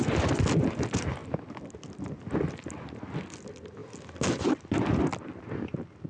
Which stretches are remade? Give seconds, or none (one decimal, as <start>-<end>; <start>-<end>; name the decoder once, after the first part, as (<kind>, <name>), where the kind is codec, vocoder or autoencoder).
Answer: none